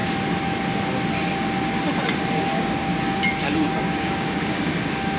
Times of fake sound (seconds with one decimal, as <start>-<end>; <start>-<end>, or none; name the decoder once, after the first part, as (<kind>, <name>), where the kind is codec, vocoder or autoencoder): 2.5-5.2 (codec, DAC)